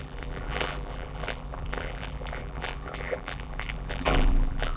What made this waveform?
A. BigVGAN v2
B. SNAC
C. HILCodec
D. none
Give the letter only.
A